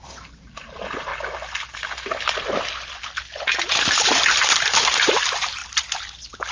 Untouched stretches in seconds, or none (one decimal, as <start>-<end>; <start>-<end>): 1.1-4.4; 5.6-6.5